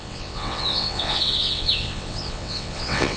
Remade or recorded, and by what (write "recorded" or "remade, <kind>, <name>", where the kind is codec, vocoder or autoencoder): remade, vocoder, WaveNeXt